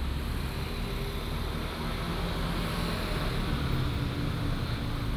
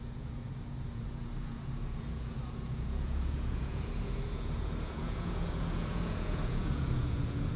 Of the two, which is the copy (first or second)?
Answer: second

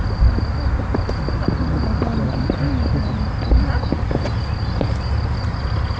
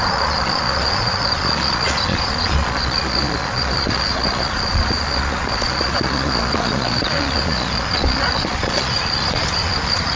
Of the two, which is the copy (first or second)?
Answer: second